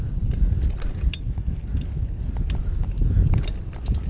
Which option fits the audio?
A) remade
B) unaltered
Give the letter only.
B